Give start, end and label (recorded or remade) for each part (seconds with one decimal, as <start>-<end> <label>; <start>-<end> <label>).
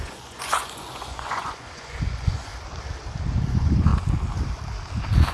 0.0-2.5 remade; 2.5-3.5 recorded; 3.5-3.9 remade; 3.9-5.3 recorded